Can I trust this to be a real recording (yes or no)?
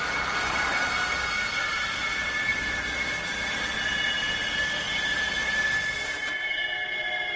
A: yes